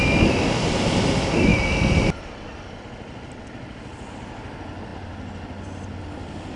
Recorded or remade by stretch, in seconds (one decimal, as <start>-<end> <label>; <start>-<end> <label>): 0.0-6.6 recorded